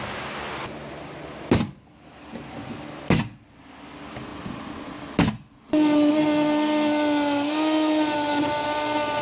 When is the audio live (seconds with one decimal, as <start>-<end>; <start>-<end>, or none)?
0.0-9.2